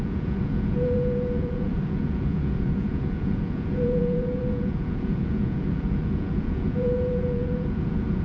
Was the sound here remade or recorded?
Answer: remade